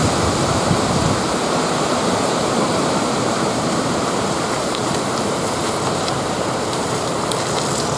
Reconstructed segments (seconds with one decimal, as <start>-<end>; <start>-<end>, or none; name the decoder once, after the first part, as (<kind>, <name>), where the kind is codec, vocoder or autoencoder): 2.7-7.3 (vocoder, BigVGAN v2)